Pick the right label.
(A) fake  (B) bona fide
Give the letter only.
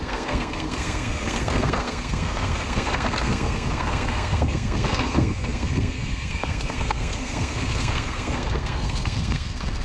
A